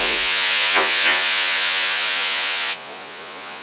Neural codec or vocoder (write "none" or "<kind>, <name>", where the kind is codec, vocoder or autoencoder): vocoder, Vocos